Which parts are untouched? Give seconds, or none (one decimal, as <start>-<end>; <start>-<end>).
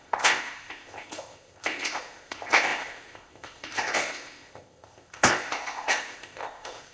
none